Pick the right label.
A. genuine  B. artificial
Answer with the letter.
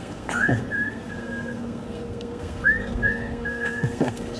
B